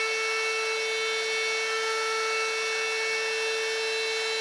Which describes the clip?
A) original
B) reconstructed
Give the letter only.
A